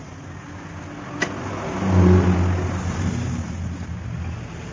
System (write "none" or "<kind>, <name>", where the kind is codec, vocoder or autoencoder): none